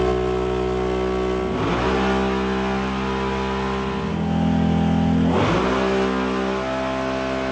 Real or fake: real